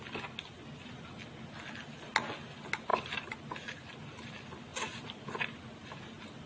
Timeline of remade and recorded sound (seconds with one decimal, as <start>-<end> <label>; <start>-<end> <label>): 0.0-6.5 recorded

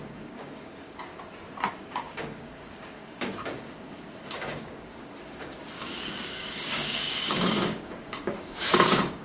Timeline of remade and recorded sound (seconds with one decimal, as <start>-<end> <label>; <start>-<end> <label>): 0.0-1.1 remade; 1.1-1.7 recorded; 1.7-9.2 remade